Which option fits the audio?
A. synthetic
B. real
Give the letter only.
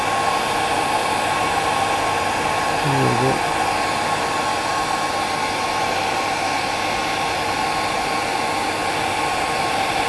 B